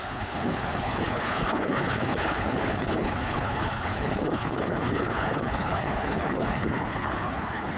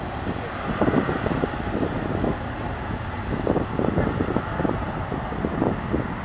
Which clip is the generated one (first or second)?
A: first